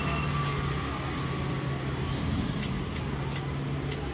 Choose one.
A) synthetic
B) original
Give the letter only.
B